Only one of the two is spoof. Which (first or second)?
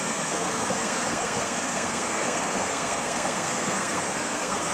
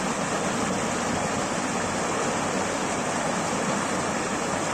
first